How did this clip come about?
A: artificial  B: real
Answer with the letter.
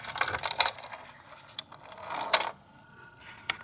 B